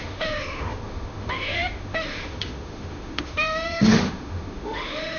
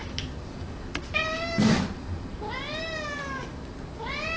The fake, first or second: first